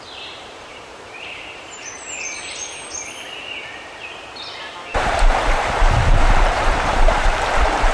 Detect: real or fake fake